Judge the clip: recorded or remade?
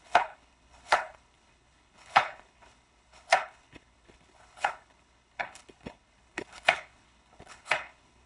remade